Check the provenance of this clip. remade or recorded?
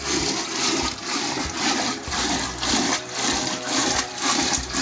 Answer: recorded